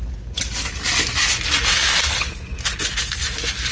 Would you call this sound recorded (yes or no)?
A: yes